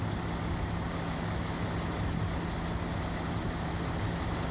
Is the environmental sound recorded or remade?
recorded